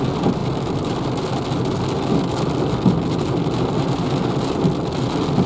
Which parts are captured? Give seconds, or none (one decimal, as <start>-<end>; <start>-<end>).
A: 0.0-5.5